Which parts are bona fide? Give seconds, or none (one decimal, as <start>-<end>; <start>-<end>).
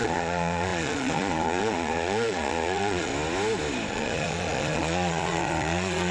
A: 3.1-3.9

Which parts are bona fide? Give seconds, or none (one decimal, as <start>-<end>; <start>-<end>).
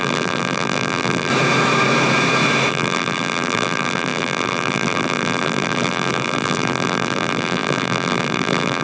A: 1.3-2.7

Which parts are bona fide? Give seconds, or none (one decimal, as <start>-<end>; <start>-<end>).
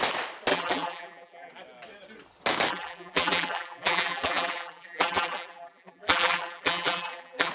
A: 0.0-0.5; 1.5-2.7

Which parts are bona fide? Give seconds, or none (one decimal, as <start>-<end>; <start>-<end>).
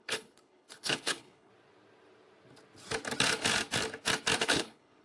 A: 1.5-4.4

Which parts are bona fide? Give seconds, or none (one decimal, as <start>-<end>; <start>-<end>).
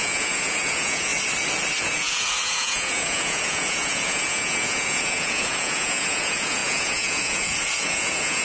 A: 1.1-1.8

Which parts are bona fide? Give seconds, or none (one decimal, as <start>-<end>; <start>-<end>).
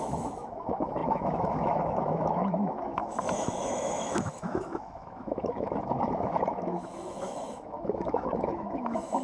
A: none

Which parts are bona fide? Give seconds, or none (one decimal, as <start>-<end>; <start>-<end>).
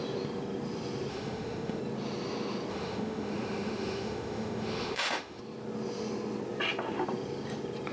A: 0.0-1.1; 1.8-2.7; 5.4-7.9